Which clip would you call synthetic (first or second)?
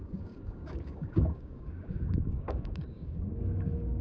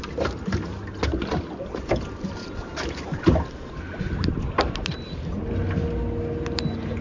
first